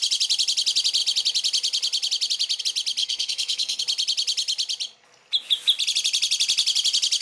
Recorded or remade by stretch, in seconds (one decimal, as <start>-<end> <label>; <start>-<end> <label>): 0.0-3.0 recorded; 3.0-3.8 remade; 3.8-7.2 recorded